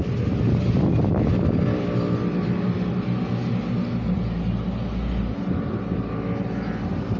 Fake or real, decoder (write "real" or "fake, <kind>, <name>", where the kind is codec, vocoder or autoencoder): real